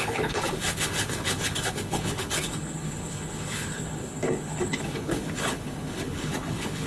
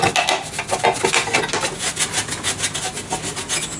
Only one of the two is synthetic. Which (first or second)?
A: first